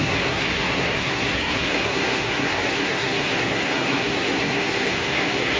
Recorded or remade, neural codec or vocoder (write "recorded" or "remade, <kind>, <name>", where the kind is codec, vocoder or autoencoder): remade, codec, SNAC